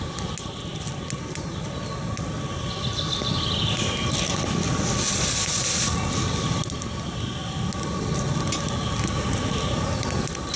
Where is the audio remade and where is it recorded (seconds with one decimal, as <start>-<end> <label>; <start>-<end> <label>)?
0.0-10.6 recorded